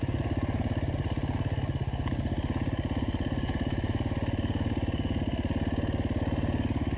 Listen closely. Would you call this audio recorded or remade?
recorded